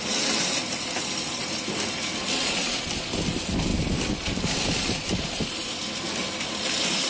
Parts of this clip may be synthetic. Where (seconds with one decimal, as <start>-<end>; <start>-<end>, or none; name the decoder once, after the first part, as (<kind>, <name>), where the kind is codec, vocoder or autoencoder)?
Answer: 0.0-3.7 (vocoder, BigVGAN v2); 4.4-7.1